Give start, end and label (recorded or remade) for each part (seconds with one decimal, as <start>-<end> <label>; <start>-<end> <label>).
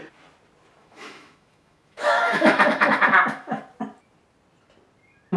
0.0-0.8 recorded; 0.8-3.6 remade; 3.6-5.4 recorded